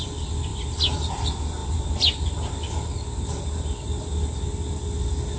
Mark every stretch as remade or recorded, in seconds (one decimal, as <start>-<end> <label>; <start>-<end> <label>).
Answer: 0.0-5.4 recorded